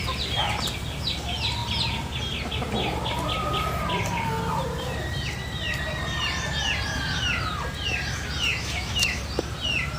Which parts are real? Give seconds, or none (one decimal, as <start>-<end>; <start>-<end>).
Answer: 0.0-8.5; 9.2-10.0